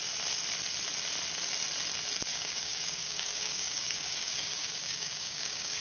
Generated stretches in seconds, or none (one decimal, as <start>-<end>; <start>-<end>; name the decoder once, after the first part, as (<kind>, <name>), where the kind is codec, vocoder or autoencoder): 2.3-5.8 (codec, DAC)